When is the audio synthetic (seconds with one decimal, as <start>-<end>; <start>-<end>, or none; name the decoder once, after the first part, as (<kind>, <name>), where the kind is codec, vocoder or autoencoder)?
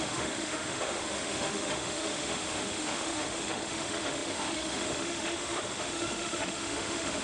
0.0-7.2 (autoencoder, DAC-VAE)